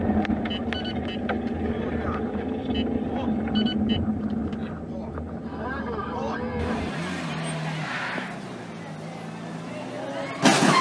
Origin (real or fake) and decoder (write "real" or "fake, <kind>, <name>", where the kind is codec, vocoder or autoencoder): real